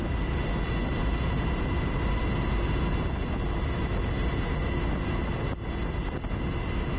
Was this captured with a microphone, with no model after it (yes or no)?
yes